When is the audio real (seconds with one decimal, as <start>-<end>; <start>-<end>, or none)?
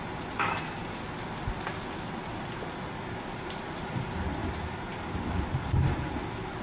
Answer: 0.0-6.6